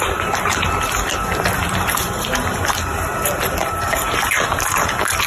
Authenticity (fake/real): fake